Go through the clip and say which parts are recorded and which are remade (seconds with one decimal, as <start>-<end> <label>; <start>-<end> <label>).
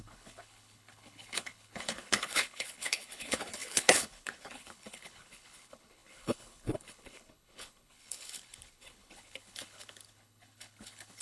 0.0-11.2 remade